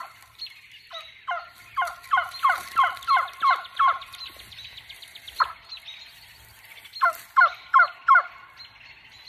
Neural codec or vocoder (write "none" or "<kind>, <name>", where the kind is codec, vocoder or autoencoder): none